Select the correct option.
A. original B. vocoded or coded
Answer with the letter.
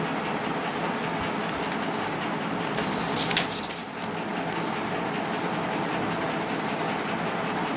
A